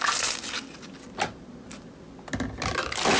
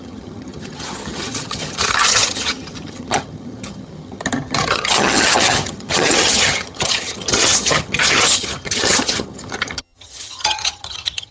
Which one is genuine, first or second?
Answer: first